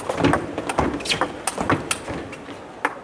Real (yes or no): yes